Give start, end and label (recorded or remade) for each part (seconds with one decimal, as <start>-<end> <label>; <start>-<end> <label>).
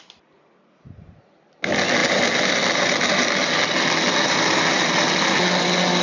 0.0-6.0 recorded